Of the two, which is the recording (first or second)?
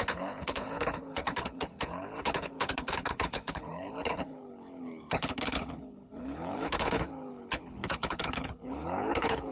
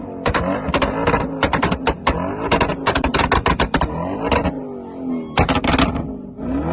second